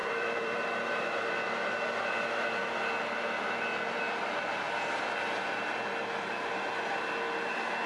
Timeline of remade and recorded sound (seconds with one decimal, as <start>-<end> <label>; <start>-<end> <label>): 0.0-1.2 remade; 1.2-7.9 recorded